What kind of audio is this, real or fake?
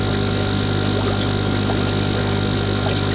real